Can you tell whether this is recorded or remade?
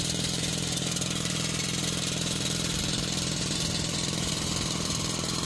remade